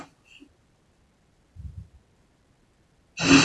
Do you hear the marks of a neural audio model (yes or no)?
no